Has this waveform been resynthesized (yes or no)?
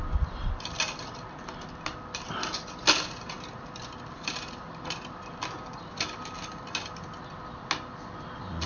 no